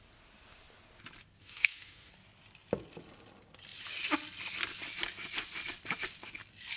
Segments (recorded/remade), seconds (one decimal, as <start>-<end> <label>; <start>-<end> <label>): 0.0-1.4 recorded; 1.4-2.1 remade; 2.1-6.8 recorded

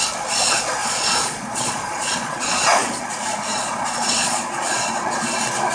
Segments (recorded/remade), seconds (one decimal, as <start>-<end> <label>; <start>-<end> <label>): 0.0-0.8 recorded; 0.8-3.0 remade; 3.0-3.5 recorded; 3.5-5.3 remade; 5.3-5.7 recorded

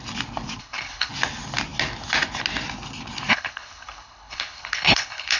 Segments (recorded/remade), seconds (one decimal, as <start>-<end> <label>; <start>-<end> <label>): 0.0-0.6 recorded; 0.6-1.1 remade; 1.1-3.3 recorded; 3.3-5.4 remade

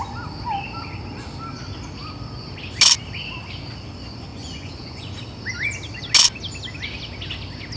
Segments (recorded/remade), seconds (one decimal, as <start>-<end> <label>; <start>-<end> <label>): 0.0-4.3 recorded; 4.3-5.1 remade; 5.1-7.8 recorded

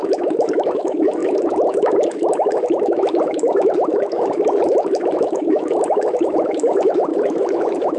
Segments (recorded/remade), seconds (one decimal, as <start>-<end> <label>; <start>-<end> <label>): 0.0-8.0 remade

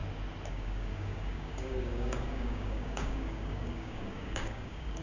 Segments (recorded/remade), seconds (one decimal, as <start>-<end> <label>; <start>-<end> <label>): 0.0-0.5 recorded; 0.5-5.0 remade